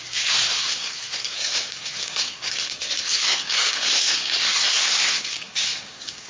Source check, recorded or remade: remade